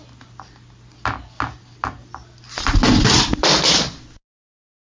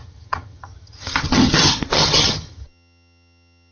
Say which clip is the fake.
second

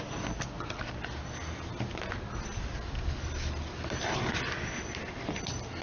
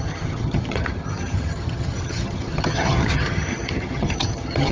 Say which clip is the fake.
second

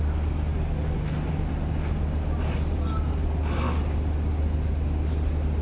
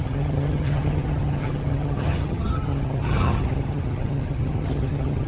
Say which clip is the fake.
second